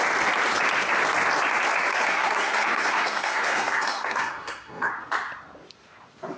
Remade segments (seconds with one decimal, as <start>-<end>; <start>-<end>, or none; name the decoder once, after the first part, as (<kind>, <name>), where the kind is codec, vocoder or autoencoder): 1.9-4.9 (codec, SNAC)